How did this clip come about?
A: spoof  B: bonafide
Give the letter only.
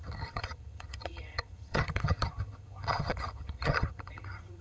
A